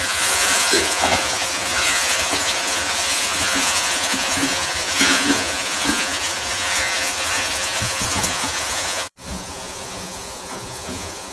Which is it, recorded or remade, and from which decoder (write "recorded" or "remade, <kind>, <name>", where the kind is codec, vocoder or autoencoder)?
remade, vocoder, Vocos